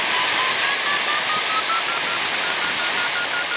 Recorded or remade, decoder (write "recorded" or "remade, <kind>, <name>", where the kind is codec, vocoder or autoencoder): recorded